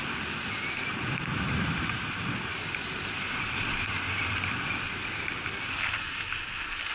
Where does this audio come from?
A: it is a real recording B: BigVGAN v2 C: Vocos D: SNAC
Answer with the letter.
A